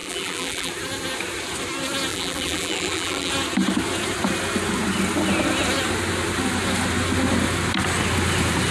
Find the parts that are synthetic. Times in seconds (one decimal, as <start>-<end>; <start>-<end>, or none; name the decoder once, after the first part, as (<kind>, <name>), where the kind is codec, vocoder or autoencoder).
0.0-0.7 (vocoder, BigVGAN v2); 2.1-3.3